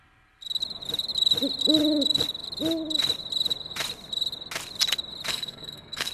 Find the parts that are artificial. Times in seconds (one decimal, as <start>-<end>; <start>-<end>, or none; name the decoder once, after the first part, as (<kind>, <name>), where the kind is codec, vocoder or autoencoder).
5.3-6.1 (codec, SNAC)